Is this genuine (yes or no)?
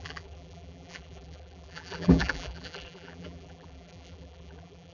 no